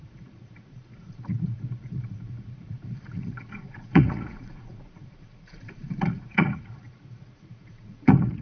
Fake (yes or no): yes